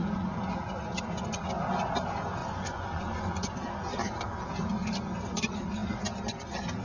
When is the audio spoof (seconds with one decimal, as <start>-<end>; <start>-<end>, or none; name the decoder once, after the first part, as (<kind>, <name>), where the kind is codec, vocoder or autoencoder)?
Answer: 2.4-3.5 (vocoder, Vocos)